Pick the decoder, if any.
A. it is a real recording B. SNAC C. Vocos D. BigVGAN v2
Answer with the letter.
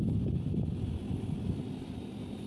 A